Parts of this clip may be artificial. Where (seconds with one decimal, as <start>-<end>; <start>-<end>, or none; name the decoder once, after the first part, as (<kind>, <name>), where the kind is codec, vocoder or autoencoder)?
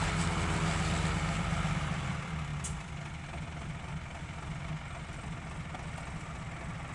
none